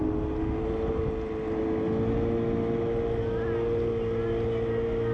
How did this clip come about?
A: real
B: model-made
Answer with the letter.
A